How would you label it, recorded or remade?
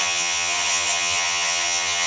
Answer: remade